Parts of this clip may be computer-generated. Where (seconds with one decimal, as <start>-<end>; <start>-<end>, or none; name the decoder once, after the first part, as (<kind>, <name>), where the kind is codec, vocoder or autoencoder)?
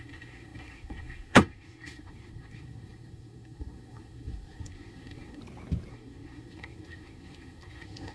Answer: 0.0-5.4 (codec, SNAC); 5.9-8.1